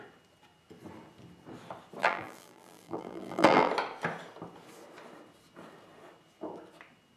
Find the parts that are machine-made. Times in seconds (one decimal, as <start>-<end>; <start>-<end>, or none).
2.0-3.7